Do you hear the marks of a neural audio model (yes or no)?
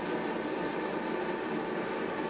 no